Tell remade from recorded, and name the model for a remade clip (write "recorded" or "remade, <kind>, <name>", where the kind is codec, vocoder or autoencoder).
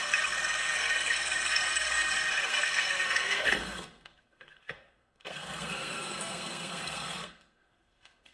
remade, codec, SNAC